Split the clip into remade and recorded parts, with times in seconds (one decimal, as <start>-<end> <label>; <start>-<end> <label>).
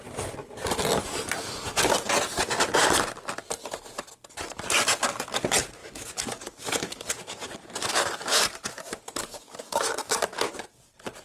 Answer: 0.0-5.8 recorded; 5.8-10.5 remade; 10.5-11.2 recorded